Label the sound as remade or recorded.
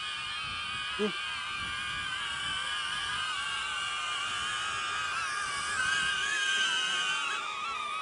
recorded